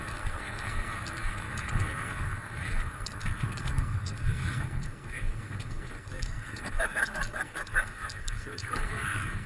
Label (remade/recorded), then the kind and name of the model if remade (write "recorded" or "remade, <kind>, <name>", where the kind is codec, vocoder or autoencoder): remade, codec, SNAC